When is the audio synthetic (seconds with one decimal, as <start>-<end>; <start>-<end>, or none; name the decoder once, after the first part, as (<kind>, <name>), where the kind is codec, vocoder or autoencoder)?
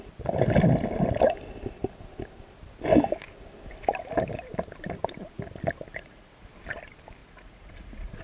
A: 5.9-6.5 (vocoder, Vocos); 7.2-8.2